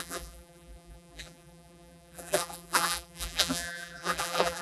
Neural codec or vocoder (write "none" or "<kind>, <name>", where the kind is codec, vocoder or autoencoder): vocoder, BigVGAN v2